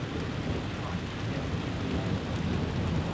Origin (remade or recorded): recorded